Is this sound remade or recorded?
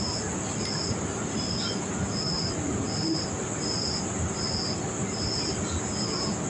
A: recorded